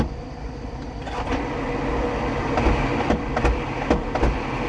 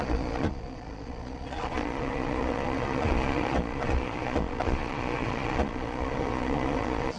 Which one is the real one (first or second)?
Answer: first